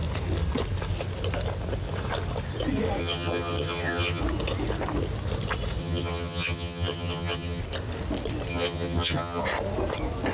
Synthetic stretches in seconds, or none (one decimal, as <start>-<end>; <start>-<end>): 3.0-4.2; 5.8-7.6; 8.5-9.4